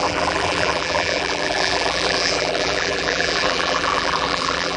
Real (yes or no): no